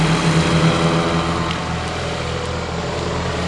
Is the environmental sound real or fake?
real